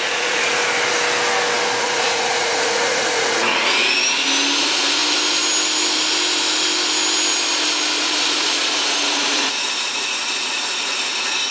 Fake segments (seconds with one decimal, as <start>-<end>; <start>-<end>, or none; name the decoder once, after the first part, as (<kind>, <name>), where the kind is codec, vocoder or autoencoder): 0.0-0.6 (vocoder, Vocos); 1.8-3.8; 4.6-5.0; 8.0-11.5